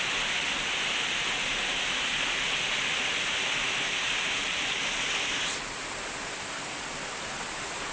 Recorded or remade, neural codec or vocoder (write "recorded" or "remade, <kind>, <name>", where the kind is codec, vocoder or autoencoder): recorded